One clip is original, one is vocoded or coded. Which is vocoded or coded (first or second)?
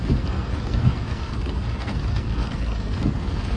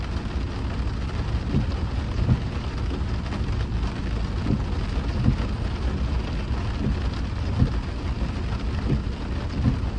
first